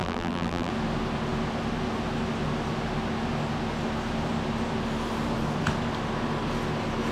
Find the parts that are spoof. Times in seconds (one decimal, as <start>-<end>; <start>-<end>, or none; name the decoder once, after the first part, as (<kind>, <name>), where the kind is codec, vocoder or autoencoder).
0.0-0.7 (vocoder, BigVGAN v2)